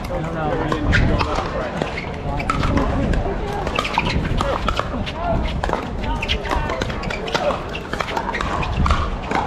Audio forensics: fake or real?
real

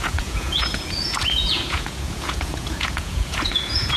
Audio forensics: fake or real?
fake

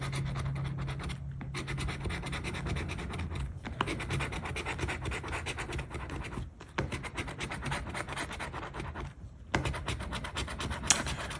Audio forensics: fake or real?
real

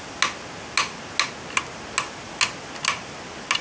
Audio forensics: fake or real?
real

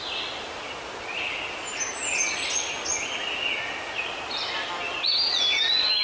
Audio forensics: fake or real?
real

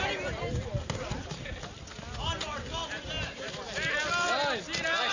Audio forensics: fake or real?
real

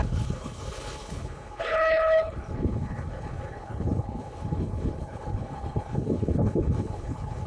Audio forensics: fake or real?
fake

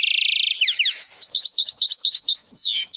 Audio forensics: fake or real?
fake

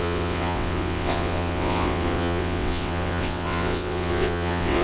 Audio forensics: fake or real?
fake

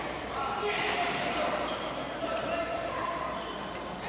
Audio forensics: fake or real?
fake